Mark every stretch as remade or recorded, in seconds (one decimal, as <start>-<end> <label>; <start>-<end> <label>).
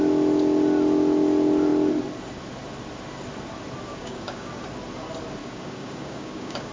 0.0-3.9 recorded; 3.9-4.5 remade; 4.5-5.4 recorded; 5.4-6.7 remade